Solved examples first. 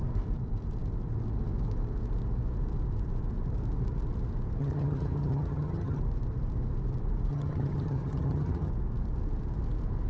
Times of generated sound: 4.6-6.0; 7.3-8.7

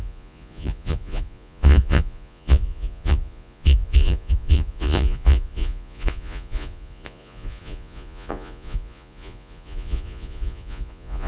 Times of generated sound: 0.0-11.3

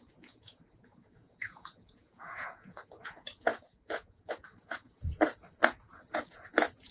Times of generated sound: 0.0-6.9

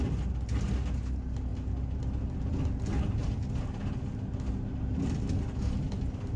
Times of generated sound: none

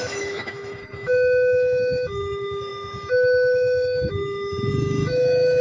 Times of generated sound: 0.0-5.6

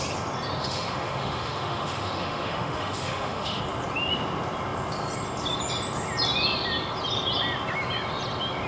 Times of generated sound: 0.6-3.6